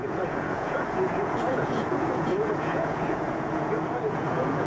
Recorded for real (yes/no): no